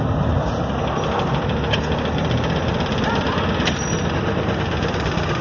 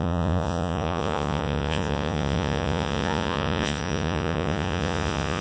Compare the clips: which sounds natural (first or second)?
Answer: first